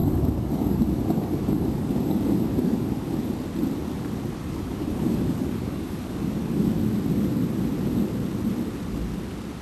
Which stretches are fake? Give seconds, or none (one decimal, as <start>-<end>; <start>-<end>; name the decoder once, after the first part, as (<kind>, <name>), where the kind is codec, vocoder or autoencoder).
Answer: 0.0-3.3 (codec, DAC); 4.4-6.8

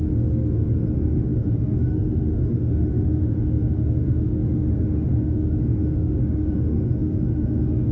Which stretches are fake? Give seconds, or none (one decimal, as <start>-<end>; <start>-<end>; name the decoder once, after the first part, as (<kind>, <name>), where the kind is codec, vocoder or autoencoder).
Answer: 0.0-7.9 (autoencoder, DAC-VAE)

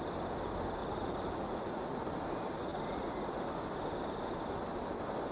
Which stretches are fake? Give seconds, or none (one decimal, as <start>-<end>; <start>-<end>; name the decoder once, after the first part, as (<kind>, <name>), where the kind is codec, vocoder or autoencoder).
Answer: 0.8-2.0 (vocoder, Vocos); 2.7-3.5

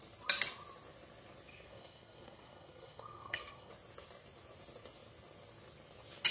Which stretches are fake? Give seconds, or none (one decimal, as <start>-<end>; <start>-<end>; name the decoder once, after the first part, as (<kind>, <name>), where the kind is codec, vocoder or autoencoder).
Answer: 1.5-3.7 (codec, SNAC)

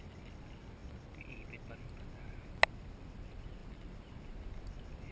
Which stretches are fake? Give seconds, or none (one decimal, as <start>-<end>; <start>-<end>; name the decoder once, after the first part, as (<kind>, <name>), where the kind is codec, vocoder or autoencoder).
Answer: none